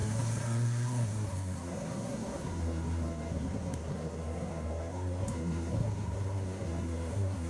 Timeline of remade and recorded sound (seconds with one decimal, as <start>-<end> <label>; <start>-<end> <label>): 0.0-7.5 remade